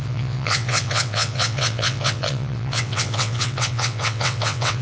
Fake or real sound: fake